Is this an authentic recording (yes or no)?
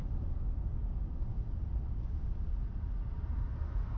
yes